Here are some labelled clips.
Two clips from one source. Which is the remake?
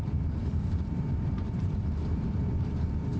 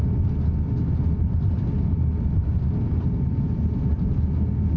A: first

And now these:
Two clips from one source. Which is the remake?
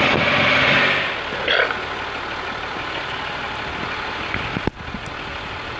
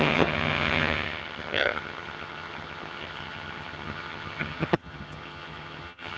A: second